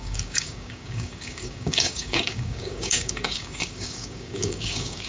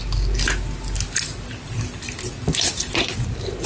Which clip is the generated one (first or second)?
first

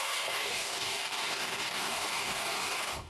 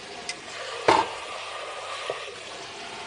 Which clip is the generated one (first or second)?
first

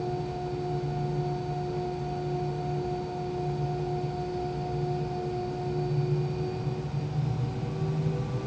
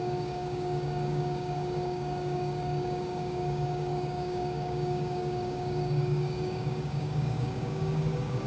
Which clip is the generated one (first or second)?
second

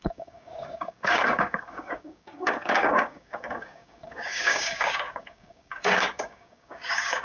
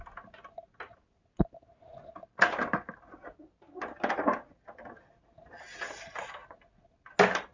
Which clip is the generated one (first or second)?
first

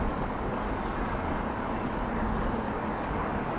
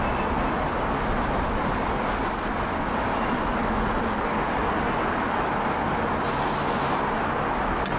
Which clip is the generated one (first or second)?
first